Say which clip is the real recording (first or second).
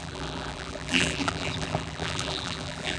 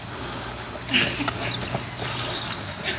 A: second